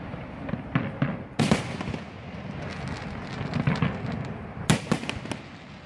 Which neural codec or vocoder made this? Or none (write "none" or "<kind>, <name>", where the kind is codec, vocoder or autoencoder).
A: none